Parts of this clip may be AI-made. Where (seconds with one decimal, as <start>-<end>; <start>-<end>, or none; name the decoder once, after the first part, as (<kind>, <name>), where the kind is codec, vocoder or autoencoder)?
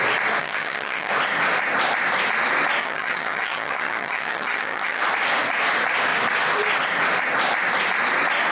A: 0.4-1.1 (vocoder, HiFi-GAN); 2.8-5.0